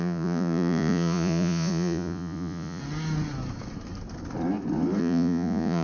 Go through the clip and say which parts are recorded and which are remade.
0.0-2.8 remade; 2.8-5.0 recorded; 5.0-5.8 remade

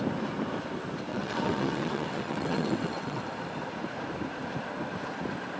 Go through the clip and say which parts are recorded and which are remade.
0.0-1.1 recorded; 1.1-3.2 remade; 3.2-5.6 recorded

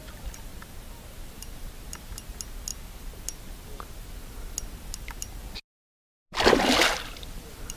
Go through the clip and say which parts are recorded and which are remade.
0.0-0.5 recorded; 0.5-1.4 remade; 1.4-7.8 recorded